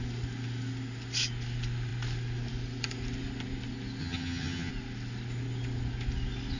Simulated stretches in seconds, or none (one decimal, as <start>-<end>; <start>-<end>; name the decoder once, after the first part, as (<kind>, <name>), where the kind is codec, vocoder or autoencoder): 4.0-4.7 (vocoder, HiFi-GAN)